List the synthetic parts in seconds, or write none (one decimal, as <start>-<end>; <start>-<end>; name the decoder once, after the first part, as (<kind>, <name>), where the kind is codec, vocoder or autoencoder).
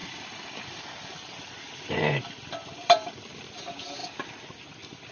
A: 0.0-4.0 (vocoder, BigVGAN v2); 4.5-5.1